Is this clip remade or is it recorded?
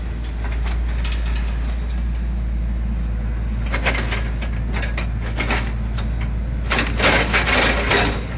recorded